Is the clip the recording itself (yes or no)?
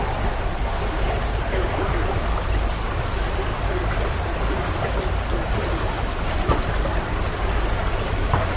yes